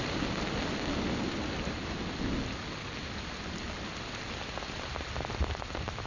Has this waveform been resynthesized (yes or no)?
no